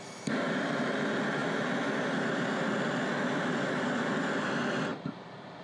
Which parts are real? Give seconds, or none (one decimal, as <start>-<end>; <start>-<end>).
0.0-5.6